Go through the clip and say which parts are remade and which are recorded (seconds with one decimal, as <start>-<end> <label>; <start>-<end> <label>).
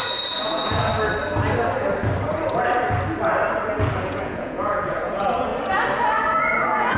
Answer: 0.0-0.9 remade; 0.9-4.0 recorded; 4.0-5.5 remade; 5.5-6.5 recorded; 6.5-7.0 remade